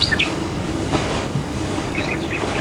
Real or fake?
fake